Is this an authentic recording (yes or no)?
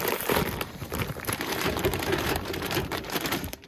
no